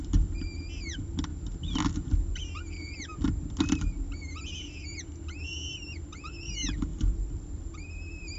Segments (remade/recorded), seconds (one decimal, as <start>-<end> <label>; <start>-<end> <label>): 0.0-1.3 remade; 1.3-3.6 recorded; 3.6-4.9 remade; 4.9-6.5 recorded; 6.5-8.4 remade